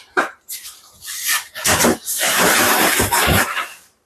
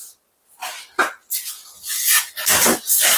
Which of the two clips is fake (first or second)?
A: first